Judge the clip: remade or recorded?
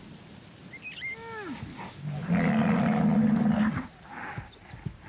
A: recorded